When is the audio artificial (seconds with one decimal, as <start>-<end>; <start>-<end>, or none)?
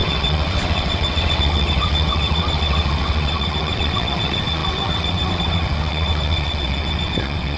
0.0-7.6